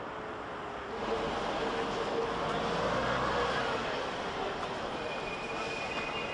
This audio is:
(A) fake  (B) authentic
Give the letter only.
B